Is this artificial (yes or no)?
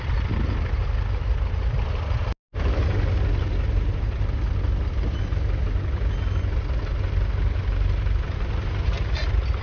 no